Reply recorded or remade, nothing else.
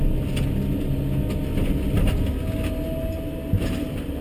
recorded